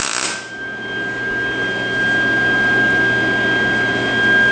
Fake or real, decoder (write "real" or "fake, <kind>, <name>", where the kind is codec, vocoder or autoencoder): real